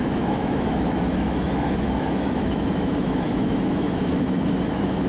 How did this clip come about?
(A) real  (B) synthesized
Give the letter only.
B